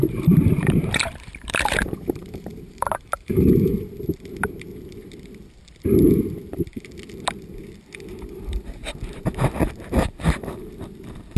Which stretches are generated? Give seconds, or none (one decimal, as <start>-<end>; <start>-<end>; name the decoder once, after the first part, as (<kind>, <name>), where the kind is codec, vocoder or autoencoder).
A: 0.0-3.7 (vocoder, BigVGAN v2); 8.3-8.8